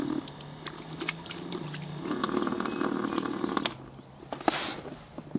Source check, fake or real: real